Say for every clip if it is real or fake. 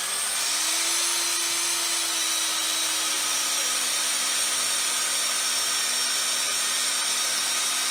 real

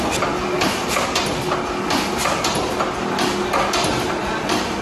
real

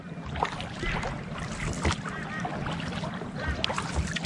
real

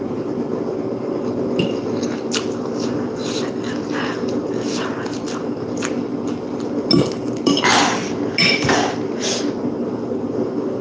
real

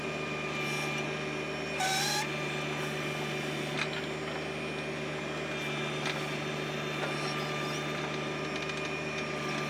real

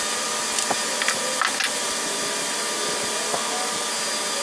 real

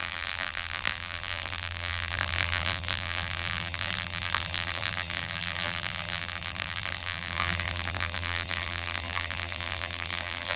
fake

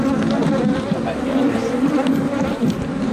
real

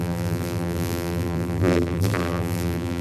fake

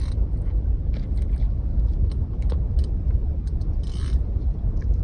real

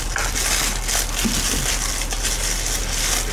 real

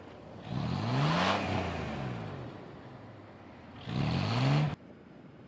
real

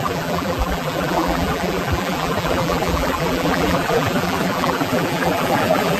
fake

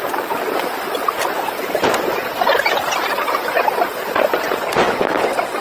fake